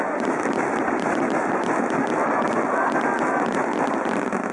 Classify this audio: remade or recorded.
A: recorded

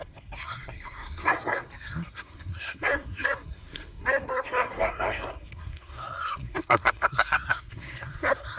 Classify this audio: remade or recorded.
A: remade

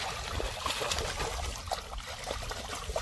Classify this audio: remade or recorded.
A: recorded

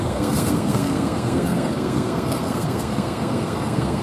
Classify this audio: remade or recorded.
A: remade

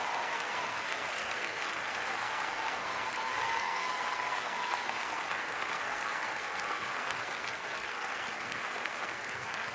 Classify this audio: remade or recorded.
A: remade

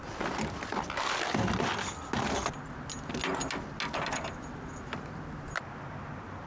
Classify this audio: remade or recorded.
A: recorded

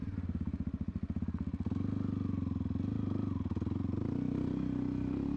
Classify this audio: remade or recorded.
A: recorded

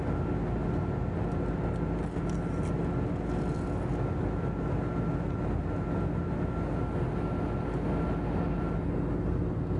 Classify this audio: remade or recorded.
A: recorded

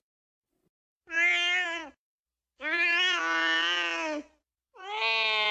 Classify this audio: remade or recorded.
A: recorded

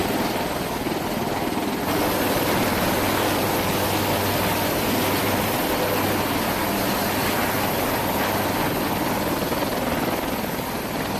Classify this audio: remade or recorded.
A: recorded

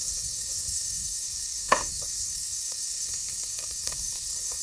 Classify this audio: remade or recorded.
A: remade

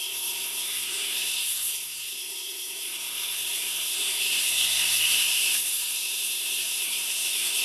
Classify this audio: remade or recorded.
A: remade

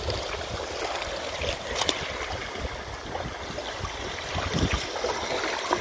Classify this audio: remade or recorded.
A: recorded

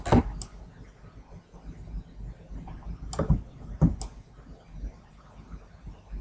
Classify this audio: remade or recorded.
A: recorded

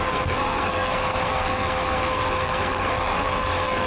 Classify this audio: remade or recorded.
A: remade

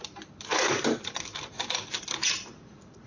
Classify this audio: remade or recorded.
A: recorded